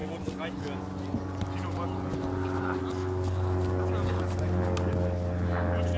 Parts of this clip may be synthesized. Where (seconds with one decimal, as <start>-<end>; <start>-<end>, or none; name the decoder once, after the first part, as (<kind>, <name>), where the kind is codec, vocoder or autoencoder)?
none